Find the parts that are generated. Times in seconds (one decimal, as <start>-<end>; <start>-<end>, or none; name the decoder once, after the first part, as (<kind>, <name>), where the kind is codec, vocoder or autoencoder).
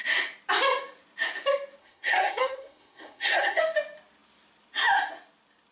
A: 1.8-3.6 (codec, SNAC)